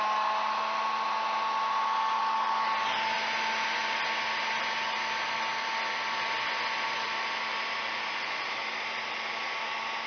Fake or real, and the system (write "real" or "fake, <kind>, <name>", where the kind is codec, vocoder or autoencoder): real